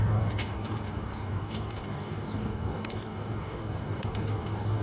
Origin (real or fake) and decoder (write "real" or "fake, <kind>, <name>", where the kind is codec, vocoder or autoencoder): fake, codec, DAC